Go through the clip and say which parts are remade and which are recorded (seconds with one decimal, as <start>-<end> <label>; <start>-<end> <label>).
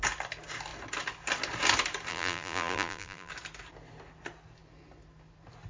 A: 0.0-2.1 recorded; 2.1-3.3 remade; 3.3-5.7 recorded